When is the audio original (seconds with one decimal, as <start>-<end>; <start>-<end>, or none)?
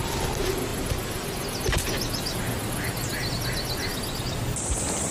0.0-5.1